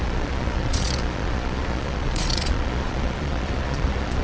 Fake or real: fake